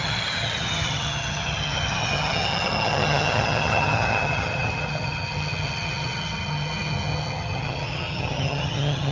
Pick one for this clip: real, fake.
fake